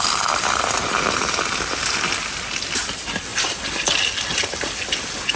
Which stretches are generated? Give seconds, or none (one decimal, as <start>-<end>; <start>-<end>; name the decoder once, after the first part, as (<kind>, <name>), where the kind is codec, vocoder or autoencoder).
none